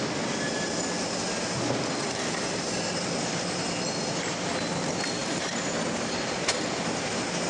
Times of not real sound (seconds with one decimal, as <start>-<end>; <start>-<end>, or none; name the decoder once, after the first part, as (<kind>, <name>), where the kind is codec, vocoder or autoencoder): 5.2-6.1 (vocoder, BigVGAN v2)